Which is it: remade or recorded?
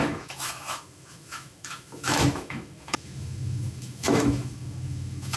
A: remade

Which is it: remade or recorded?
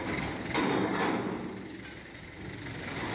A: recorded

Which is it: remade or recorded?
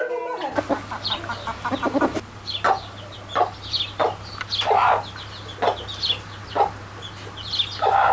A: recorded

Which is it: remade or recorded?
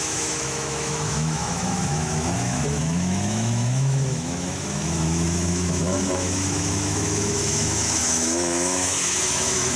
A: remade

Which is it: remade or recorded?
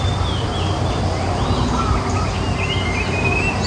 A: recorded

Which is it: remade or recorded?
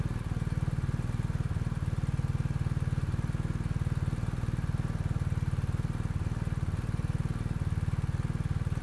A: recorded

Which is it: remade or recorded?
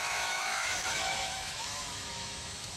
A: remade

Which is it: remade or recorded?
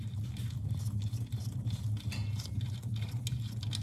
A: recorded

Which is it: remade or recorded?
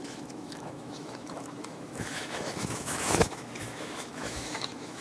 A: remade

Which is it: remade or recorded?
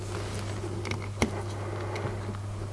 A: recorded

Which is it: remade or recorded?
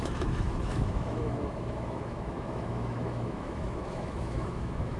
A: remade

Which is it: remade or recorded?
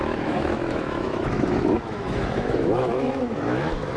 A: remade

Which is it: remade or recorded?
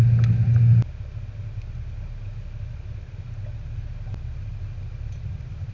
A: recorded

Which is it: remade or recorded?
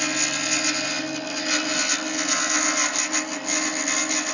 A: recorded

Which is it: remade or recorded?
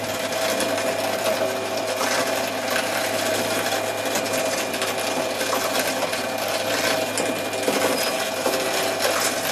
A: recorded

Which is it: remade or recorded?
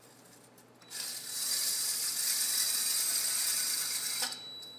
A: recorded